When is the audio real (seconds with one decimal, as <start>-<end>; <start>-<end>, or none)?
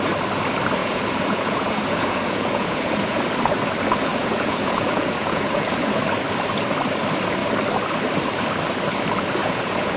0.0-0.8; 3.2-4.1; 6.0-9.4